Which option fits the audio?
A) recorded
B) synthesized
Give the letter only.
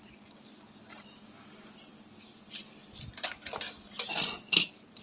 A